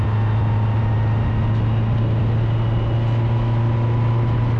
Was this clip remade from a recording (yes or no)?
no